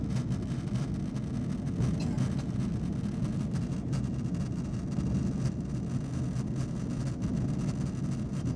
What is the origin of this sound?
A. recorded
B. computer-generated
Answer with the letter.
A